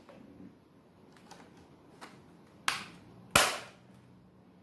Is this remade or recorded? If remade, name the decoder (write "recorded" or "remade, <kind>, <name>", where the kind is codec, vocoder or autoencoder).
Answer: recorded